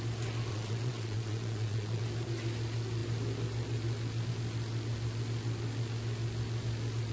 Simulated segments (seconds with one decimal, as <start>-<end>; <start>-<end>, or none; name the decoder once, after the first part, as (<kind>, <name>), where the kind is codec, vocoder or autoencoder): 0.5-2.0 (vocoder, Vocos)